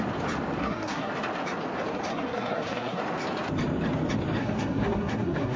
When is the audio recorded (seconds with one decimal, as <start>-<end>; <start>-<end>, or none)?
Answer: 0.0-0.6; 1.1-2.1; 3.0-4.4